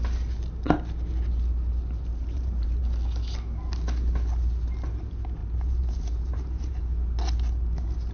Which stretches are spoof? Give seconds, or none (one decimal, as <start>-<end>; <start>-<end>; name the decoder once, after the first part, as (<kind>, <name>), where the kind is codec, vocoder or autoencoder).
2.1-2.8 (vocoder, BigVGAN v2); 5.4-6.8